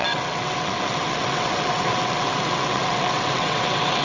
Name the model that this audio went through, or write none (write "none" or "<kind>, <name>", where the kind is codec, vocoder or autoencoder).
vocoder, WaveNeXt